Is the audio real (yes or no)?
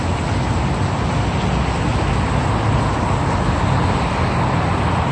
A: yes